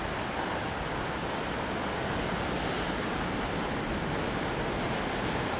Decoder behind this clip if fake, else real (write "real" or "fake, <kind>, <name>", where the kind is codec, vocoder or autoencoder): real